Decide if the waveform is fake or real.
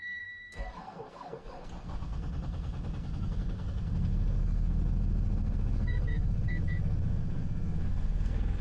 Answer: fake